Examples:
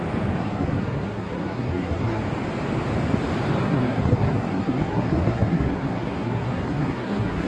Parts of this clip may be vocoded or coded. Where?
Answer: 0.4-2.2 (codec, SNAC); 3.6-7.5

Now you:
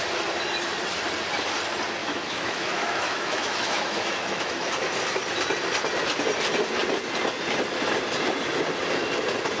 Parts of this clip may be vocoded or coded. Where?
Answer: 2.0-4.7 (autoencoder, DAC-VAE)

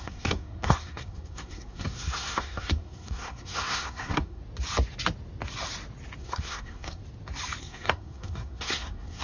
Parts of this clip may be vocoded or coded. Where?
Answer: 0.0-4.4 (codec, SNAC); 6.2-7.0; 7.6-9.2

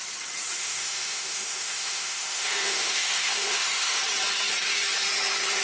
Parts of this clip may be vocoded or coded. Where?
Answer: 0.6-4.0 (autoencoder, DAC-VAE)

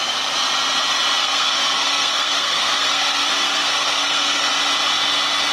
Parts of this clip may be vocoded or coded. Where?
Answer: 1.2-4.5 (codec, SNAC)

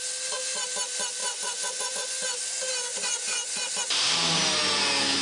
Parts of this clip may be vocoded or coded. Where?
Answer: 1.2-2.4 (vocoder, Vocos); 2.9-3.6

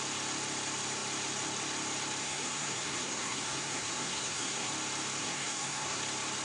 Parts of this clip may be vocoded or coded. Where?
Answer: 2.2-4.7 (codec, SNAC); 5.2-6.0

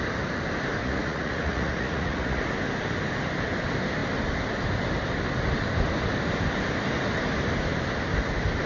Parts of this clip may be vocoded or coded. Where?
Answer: 0.8-2.4 (vocoder, Vocos)